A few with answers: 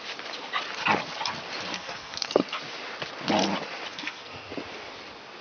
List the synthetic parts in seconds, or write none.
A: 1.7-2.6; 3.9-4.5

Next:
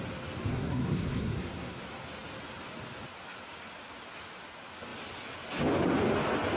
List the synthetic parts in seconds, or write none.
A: 0.5-1.8